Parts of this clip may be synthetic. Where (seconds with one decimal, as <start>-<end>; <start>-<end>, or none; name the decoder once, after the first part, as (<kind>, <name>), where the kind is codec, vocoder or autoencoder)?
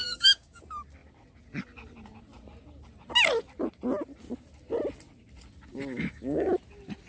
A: 0.0-0.6 (codec, DAC); 5.7-6.5